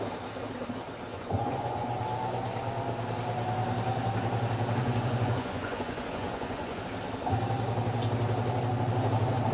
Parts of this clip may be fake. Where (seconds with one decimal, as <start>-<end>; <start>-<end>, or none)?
1.1-2.0; 4.8-6.8